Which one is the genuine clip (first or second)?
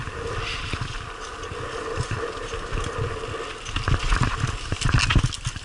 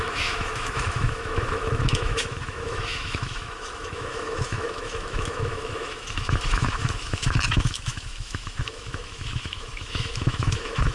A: first